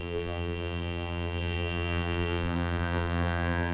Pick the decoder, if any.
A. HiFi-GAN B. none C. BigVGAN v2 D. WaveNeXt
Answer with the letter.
C